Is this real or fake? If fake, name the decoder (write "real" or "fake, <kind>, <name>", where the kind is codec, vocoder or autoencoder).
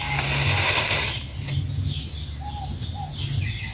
real